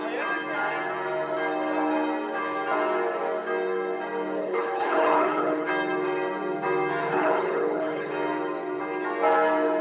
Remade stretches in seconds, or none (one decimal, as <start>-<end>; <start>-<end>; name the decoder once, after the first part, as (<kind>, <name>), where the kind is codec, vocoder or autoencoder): 4.4-5.7 (codec, HILCodec); 7.0-8.1